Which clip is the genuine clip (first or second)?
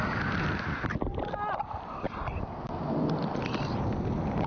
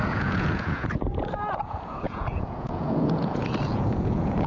first